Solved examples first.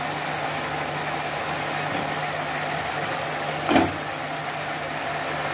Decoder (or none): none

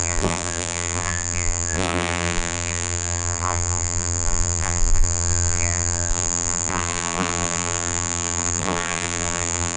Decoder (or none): vocoder, BigVGAN v2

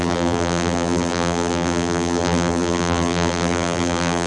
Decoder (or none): vocoder, BigVGAN v2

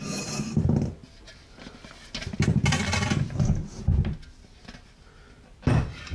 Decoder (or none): none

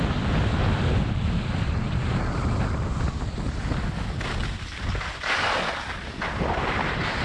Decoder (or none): none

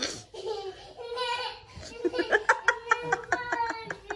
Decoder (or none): none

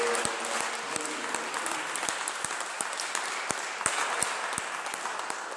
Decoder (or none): none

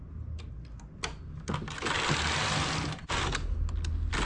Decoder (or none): none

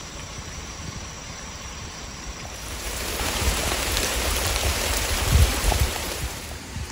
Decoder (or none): vocoder, BigVGAN v2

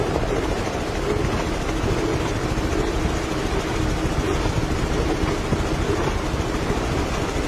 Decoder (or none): none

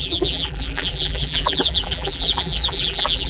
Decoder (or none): vocoder, BigVGAN v2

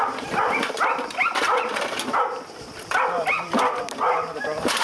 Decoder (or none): vocoder, BigVGAN v2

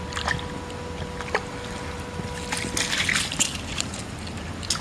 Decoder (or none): none